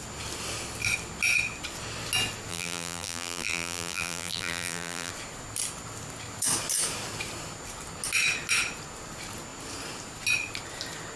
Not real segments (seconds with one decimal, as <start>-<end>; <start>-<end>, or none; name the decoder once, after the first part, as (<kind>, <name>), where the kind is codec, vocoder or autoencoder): 2.5-5.1 (vocoder, BigVGAN v2)